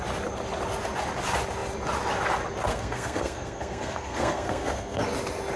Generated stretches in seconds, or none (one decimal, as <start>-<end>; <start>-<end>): 2.7-5.0